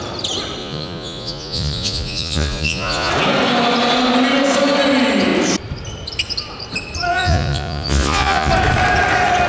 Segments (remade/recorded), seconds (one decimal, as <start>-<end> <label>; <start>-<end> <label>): 0.0-0.6 recorded; 0.6-3.1 remade; 3.1-7.1 recorded; 7.1-8.5 remade; 8.5-9.5 recorded